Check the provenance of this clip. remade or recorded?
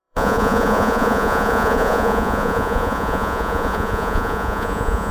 remade